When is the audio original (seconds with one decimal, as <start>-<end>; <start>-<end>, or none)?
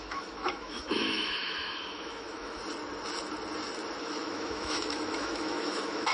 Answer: 2.6-4.0